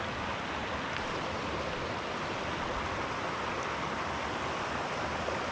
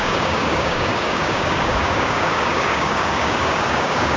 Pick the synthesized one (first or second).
second